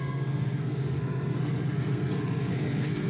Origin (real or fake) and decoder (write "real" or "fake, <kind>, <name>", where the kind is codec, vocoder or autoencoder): fake, codec, SNAC